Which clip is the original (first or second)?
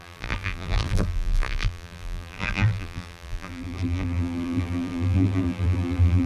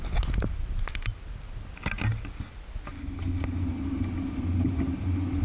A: second